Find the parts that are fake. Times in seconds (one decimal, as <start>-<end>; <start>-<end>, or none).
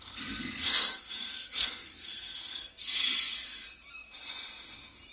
0.7-2.8